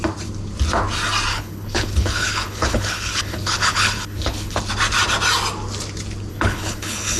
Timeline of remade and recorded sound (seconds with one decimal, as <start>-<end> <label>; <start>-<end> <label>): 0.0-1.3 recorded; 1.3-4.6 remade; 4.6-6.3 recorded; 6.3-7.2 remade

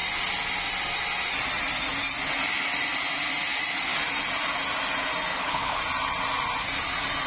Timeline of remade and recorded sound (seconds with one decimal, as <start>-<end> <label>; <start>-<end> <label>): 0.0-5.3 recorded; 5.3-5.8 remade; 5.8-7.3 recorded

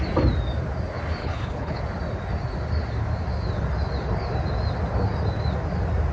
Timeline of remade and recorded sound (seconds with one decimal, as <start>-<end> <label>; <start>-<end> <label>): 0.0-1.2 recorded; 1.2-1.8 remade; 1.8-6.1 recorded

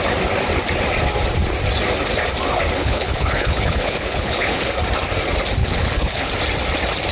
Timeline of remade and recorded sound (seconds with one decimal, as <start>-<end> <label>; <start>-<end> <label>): 0.0-2.8 recorded; 2.8-4.7 remade; 4.7-5.6 recorded; 5.6-6.3 remade; 6.3-7.1 recorded

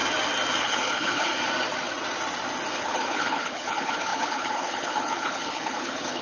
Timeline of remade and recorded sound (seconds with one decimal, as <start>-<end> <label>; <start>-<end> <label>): 0.0-0.6 recorded; 0.6-1.3 remade; 1.3-2.7 recorded; 2.7-6.2 remade

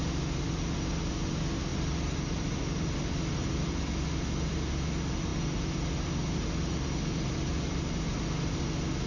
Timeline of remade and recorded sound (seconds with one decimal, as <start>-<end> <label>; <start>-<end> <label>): 0.0-9.1 recorded